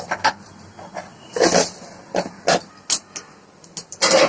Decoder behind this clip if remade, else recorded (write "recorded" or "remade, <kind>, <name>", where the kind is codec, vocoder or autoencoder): recorded